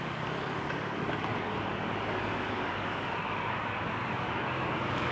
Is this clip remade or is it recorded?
remade